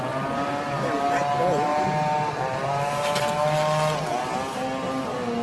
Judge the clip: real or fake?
real